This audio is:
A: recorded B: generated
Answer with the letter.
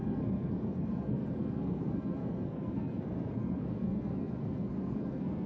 B